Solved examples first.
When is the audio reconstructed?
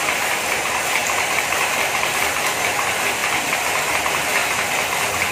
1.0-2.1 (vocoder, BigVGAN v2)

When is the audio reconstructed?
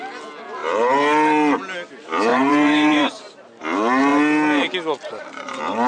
2.3-3.6 (vocoder, BigVGAN v2)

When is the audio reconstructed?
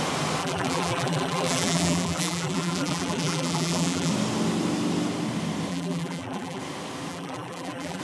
0.4-4.1 (vocoder, BigVGAN v2); 5.7-6.6; 7.1-8.0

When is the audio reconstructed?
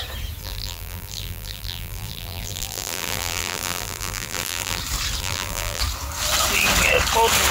0.4-4.8 (vocoder, BigVGAN v2); 5.2-5.8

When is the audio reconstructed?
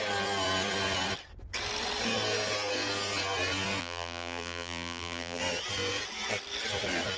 3.8-5.4 (vocoder, BigVGAN v2)